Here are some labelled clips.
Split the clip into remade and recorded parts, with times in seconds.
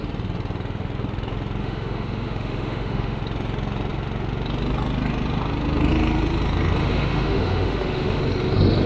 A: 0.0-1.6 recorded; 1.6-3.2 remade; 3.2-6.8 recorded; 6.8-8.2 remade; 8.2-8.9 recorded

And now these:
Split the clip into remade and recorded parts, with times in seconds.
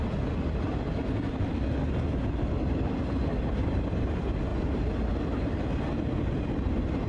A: 0.0-7.1 recorded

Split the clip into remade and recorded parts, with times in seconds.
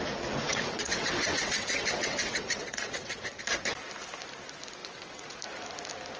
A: 0.0-0.4 recorded; 0.4-3.3 remade; 3.3-4.8 recorded; 4.8-5.4 remade; 5.4-6.2 recorded